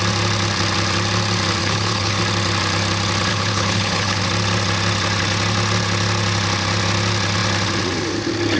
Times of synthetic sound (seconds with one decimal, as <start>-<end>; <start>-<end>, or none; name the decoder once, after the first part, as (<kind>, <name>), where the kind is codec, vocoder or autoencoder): 1.6-2.2 (codec, HILCodec); 3.3-4.2